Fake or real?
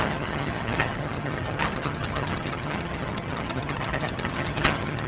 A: fake